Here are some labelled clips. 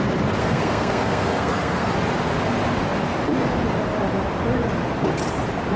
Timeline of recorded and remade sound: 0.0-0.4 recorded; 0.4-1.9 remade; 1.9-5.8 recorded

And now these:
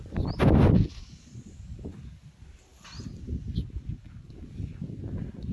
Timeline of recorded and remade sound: 0.0-5.5 recorded

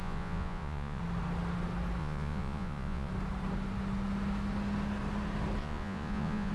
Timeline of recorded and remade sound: 0.0-1.0 remade; 1.0-2.0 recorded; 2.0-3.1 remade; 3.1-5.6 recorded; 5.6-6.5 remade

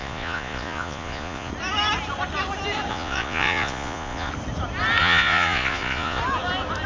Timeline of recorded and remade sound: 0.0-1.5 remade; 1.5-2.9 recorded; 2.9-4.3 remade; 4.3-5.0 recorded; 5.0-6.2 remade; 6.2-6.9 recorded